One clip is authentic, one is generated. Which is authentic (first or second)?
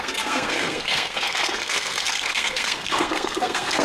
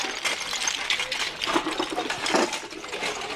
second